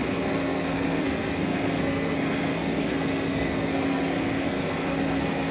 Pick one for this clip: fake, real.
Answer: fake